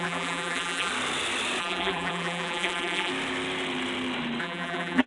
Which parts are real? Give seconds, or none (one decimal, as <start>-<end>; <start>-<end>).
0.9-1.6; 3.1-4.4